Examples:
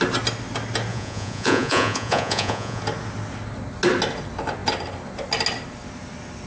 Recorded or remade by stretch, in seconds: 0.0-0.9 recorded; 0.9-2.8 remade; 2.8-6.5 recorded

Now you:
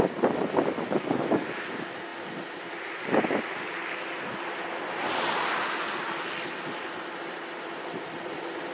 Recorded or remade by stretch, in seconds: 0.0-8.7 recorded

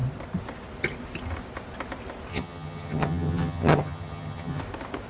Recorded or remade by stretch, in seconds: 0.0-2.3 recorded; 2.3-4.6 remade; 4.6-5.1 recorded

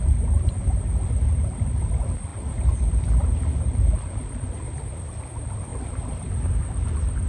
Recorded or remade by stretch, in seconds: 0.0-5.7 recorded; 5.7-6.5 remade; 6.5-7.3 recorded

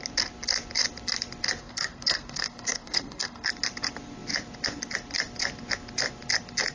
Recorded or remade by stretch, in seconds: 0.0-1.6 recorded; 1.6-3.5 remade; 3.5-6.7 recorded

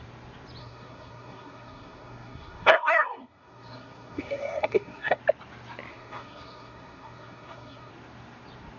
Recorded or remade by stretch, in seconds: 0.0-0.6 recorded; 0.6-5.2 remade; 5.2-5.9 recorded; 5.9-7.9 remade; 7.9-8.8 recorded

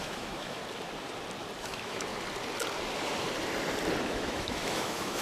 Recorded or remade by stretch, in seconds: 0.0-0.6 remade; 0.6-1.6 recorded; 1.6-2.1 remade; 2.1-4.0 recorded; 4.0-5.2 remade

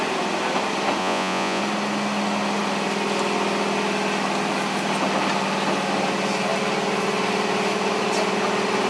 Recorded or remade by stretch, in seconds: 0.0-1.0 recorded; 1.0-1.6 remade; 1.6-8.9 recorded